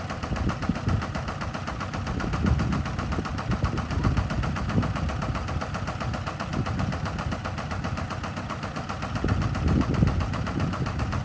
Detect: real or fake real